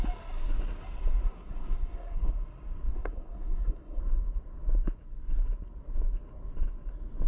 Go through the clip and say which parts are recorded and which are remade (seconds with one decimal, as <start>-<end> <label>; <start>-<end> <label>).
0.0-1.2 recorded; 1.2-2.3 remade; 2.3-2.9 recorded; 2.9-4.0 remade; 4.0-7.3 recorded